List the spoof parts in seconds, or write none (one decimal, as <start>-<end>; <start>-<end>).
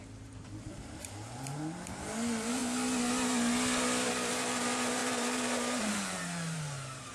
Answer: 0.0-2.6; 4.1-7.1